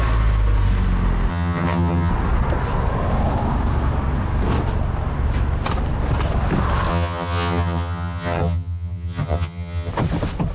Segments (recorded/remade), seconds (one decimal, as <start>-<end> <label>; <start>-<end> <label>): 0.0-1.3 recorded; 1.3-2.1 remade; 2.1-6.9 recorded; 6.9-9.9 remade; 9.9-10.5 recorded